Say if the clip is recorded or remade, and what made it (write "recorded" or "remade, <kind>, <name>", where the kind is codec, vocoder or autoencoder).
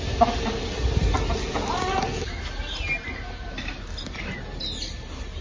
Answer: recorded